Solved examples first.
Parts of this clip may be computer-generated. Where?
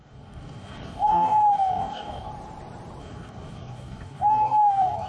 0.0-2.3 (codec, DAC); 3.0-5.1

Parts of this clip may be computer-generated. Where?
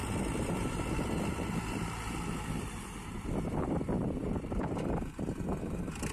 none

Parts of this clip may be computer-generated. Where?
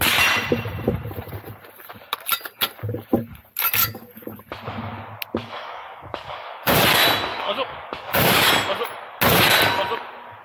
3.8-4.4 (codec, DAC); 5.4-6.8; 7.3-8.5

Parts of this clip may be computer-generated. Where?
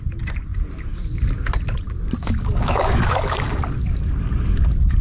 2.2-3.6 (codec, DAC)